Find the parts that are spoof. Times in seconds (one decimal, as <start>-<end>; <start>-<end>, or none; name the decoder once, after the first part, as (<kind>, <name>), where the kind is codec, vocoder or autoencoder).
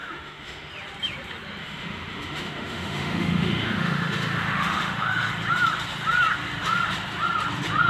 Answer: 0.0-0.7 (autoencoder, DAC-VAE); 1.6-5.3